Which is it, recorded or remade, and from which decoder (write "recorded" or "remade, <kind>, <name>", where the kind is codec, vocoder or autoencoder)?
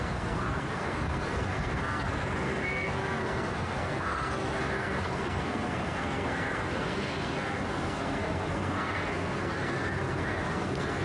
remade, codec, SNAC